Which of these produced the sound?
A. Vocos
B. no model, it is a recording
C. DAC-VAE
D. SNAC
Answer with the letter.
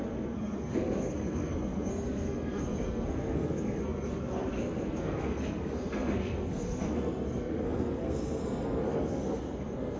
D